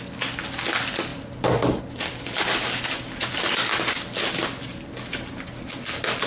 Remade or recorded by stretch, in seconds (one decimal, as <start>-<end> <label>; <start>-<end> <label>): 0.0-1.1 recorded; 1.1-1.8 remade; 1.8-6.3 recorded